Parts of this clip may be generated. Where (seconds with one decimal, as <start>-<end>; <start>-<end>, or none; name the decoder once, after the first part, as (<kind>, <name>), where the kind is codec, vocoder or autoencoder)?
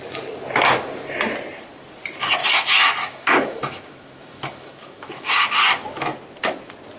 2.4-5.3 (autoencoder, DAC-VAE)